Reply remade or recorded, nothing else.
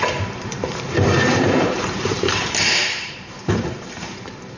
remade